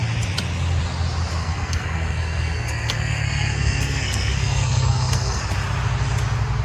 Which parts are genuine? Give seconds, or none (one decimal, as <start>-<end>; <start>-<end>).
0.0-1.4; 5.4-6.6